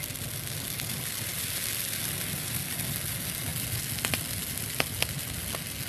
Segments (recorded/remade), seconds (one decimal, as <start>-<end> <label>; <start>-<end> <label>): 0.0-5.9 recorded